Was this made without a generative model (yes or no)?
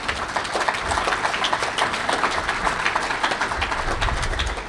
yes